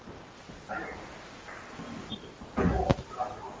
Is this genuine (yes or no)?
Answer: yes